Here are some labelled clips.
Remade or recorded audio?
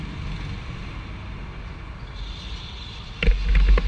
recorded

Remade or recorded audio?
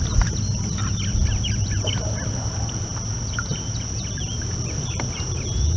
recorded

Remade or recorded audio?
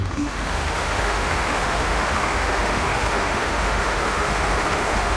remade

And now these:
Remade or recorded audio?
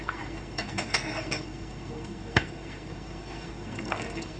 remade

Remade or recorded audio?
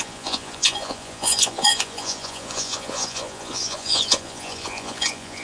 remade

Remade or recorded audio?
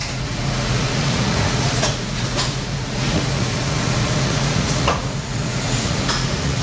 remade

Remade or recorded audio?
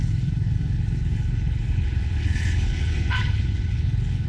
remade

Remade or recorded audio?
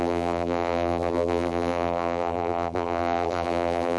remade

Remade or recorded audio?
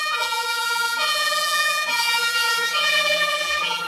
remade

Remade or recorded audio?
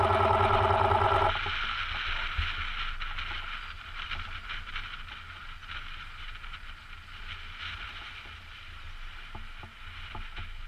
recorded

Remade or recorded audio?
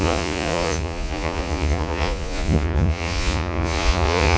remade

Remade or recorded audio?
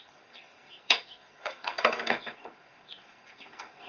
remade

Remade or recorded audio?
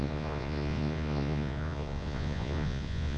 remade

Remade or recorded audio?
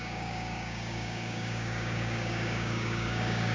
remade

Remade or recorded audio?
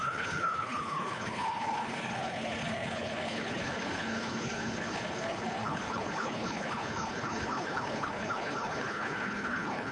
remade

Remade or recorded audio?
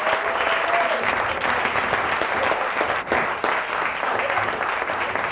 recorded